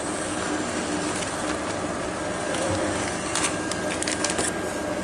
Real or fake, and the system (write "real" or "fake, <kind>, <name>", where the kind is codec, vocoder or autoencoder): real